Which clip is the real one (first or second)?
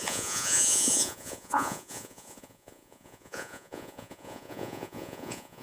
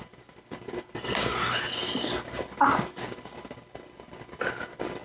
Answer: second